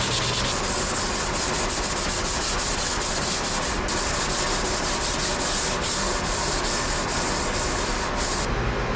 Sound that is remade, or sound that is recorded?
recorded